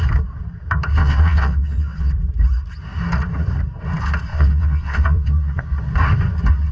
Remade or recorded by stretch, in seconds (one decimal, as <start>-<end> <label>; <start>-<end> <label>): 0.0-1.0 recorded; 1.0-2.1 remade; 2.1-4.3 recorded; 4.3-5.6 remade; 5.6-6.7 recorded